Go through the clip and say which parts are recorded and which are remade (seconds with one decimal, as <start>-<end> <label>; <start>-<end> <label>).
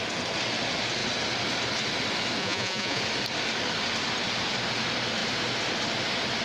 0.0-2.4 recorded; 2.4-3.0 remade; 3.0-6.4 recorded